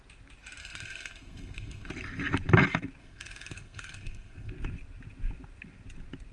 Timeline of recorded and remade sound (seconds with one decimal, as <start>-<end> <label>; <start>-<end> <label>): 0.0-0.6 recorded; 0.6-1.9 remade; 1.9-3.0 recorded; 3.0-4.5 remade; 4.5-6.3 recorded